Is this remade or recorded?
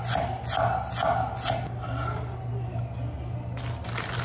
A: recorded